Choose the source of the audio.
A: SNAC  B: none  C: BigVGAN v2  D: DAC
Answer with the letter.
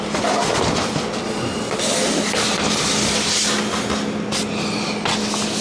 B